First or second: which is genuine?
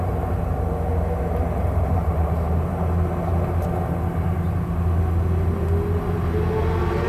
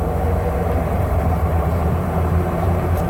first